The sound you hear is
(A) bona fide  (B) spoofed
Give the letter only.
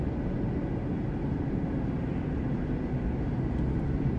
A